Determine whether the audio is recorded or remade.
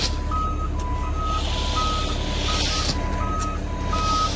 recorded